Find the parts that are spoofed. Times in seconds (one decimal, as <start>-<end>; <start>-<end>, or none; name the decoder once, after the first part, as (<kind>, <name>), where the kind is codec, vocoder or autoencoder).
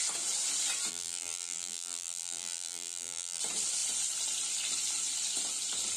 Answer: 0.9-3.4 (vocoder, BigVGAN v2)